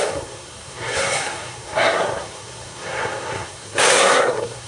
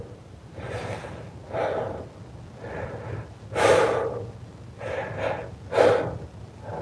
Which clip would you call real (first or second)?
second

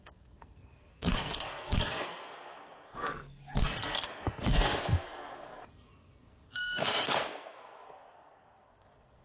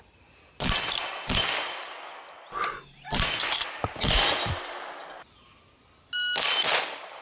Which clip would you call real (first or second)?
second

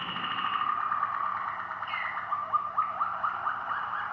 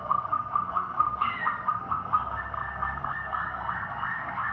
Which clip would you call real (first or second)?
first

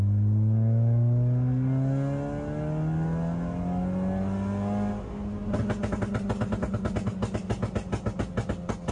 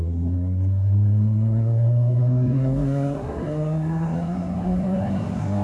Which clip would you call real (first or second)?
first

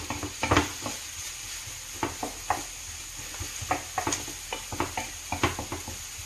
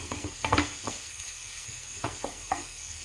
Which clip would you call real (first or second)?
first